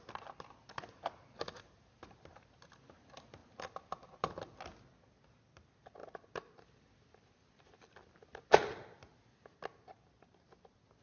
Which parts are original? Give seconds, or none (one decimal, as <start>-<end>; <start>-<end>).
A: 0.0-11.0

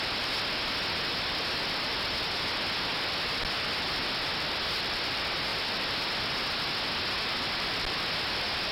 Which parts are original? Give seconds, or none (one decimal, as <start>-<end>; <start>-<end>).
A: 0.0-8.7